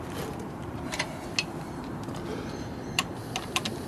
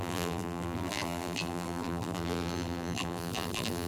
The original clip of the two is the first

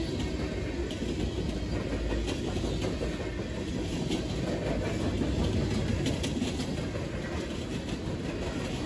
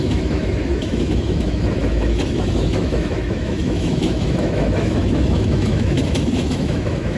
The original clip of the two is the first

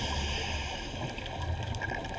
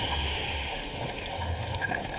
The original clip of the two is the first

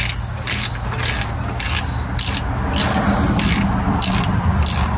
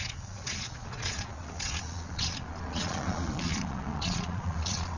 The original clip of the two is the first